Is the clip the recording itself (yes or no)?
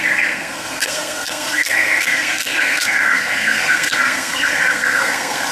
no